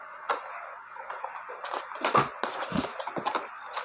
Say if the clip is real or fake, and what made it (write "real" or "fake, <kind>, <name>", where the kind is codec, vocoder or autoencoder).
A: real